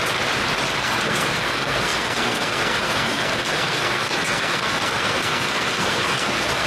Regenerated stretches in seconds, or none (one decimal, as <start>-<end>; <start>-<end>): 0.8-6.7

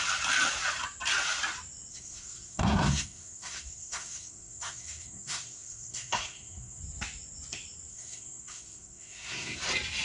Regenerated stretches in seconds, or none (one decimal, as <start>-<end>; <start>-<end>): 1.9-6.8; 7.9-9.6

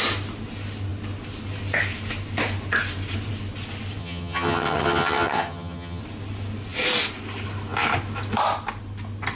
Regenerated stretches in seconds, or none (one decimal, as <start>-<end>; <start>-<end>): 4.0-6.0